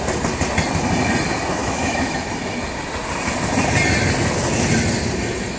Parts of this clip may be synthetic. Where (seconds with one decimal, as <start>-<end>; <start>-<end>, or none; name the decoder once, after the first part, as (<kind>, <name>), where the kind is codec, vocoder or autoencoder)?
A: 1.6-2.3 (autoencoder, DAC-VAE)